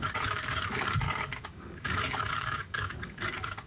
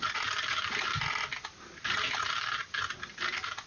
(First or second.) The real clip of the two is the second